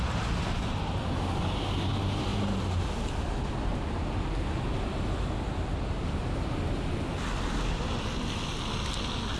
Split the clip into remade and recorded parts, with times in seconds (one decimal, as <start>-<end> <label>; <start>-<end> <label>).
0.0-9.4 recorded